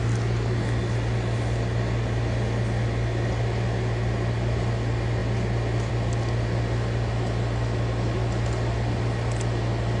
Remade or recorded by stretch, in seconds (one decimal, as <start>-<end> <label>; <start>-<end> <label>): 0.0-10.0 recorded